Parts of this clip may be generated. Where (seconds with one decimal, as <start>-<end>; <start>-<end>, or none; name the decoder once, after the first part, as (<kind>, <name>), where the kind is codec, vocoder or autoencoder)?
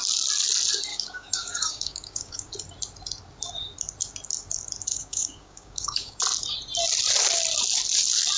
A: 0.9-2.5 (codec, DAC); 4.9-6.2